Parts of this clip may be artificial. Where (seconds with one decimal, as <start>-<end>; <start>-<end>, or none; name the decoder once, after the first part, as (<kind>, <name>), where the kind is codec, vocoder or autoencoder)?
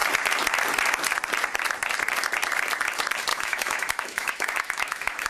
3.3-5.3 (autoencoder, DAC-VAE)